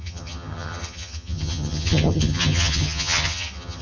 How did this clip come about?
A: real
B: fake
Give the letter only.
B